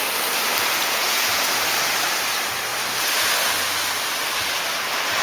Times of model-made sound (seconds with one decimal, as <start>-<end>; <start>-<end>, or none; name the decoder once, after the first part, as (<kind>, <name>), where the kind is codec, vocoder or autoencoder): 0.8-1.4 (vocoder, Vocos)